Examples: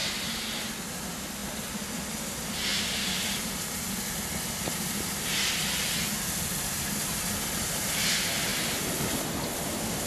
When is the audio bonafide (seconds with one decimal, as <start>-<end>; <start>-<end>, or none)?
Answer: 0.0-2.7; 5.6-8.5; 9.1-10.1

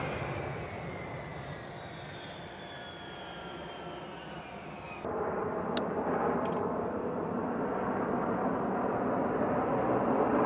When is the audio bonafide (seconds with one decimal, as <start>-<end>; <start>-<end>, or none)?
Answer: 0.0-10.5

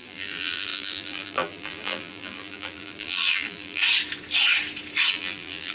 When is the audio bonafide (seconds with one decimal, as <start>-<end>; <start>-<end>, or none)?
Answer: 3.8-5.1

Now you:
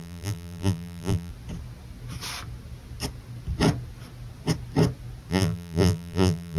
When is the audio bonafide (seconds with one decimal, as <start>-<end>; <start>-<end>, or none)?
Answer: 1.3-5.3